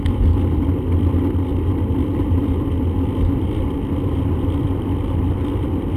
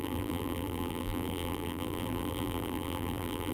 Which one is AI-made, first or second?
second